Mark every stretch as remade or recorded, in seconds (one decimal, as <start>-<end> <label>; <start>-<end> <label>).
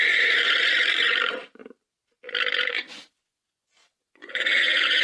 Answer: 0.0-1.6 remade; 1.6-2.7 recorded; 2.7-5.0 remade